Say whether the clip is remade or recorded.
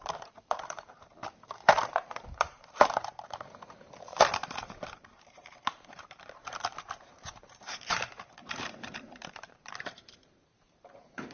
remade